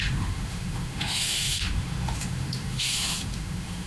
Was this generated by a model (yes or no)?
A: yes